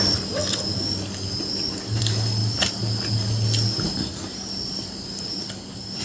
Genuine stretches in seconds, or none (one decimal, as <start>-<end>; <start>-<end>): 0.0-6.0